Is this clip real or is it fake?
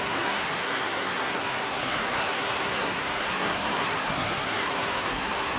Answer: fake